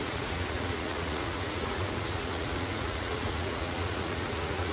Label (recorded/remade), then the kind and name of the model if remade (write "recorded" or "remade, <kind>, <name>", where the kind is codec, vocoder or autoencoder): remade, vocoder, Vocos